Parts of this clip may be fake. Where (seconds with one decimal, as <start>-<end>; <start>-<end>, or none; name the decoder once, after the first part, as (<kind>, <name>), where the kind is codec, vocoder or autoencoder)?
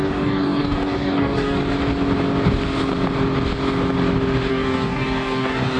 0.0-1.6 (codec, DAC); 4.5-5.8